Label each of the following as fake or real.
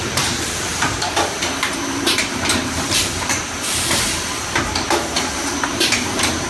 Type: fake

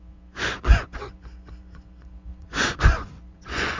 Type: fake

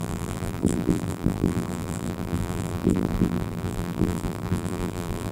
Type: fake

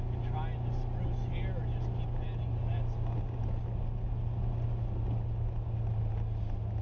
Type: real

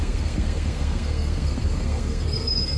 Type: fake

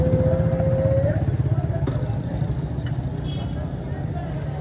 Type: real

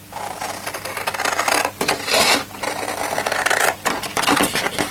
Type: real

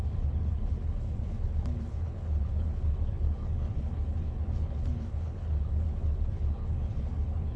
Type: fake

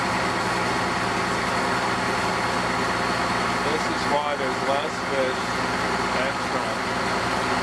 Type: real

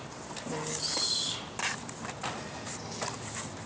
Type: real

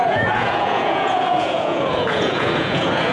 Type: fake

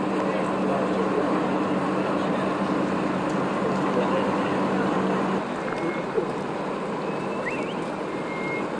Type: real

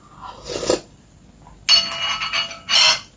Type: real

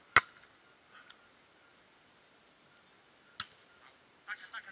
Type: real